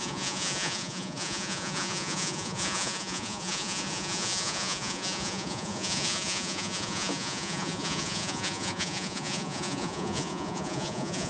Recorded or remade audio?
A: remade